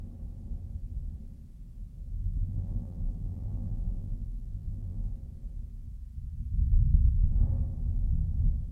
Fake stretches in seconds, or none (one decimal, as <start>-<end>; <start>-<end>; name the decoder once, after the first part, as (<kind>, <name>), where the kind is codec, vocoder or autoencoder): 2.2-5.1 (vocoder, BigVGAN v2)